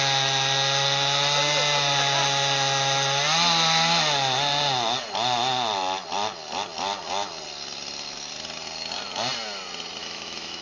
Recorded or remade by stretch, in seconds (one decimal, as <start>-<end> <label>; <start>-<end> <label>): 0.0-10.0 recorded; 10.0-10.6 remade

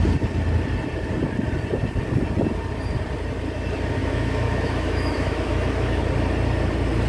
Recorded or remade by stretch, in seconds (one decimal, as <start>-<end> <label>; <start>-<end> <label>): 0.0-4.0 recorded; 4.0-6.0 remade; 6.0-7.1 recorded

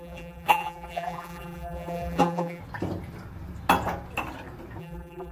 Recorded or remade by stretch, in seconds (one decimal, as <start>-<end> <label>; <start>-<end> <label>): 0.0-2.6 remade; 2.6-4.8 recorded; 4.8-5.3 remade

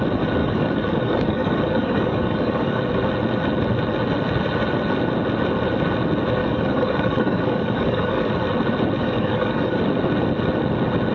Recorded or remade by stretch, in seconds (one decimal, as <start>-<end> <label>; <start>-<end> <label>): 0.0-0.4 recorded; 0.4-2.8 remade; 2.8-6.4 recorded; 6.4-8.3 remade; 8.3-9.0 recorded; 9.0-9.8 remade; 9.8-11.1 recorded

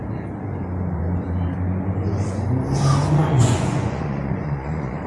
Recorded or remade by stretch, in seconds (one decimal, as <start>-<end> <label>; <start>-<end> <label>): 0.0-3.1 recorded; 3.1-5.1 remade

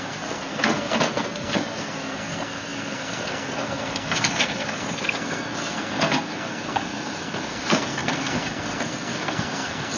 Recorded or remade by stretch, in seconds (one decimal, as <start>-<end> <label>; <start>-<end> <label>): 0.0-10.0 remade